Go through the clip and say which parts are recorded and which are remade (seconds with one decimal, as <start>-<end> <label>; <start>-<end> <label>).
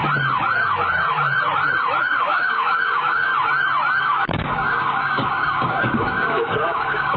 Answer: 0.0-2.0 recorded; 2.0-3.3 remade; 3.3-4.0 recorded; 4.0-7.2 remade